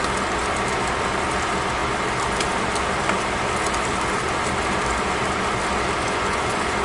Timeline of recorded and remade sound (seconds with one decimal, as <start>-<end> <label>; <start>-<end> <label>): 0.0-6.0 recorded; 6.0-6.8 remade